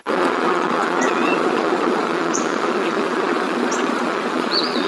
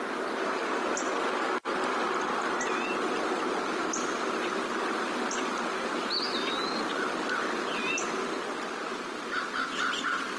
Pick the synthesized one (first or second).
first